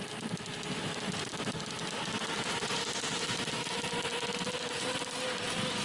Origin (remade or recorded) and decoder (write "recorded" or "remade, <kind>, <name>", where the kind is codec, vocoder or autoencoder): recorded